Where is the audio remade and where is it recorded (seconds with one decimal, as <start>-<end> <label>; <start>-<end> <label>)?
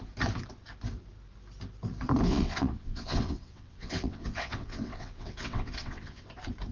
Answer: 0.0-2.3 recorded; 2.3-6.3 remade; 6.3-6.7 recorded